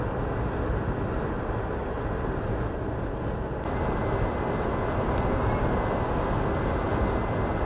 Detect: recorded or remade recorded